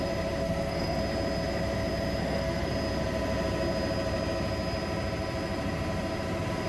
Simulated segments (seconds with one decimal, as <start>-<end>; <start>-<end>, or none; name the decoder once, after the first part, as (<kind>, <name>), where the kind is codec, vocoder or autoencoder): 0.4-1.0 (codec, SNAC); 2.2-2.7